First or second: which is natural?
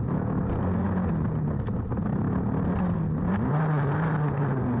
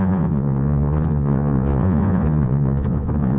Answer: first